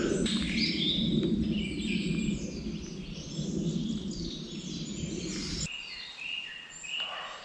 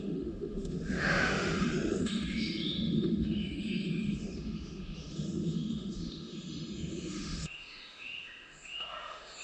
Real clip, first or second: first